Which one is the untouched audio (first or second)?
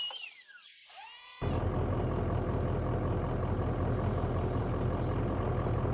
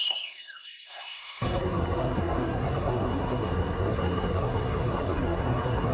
first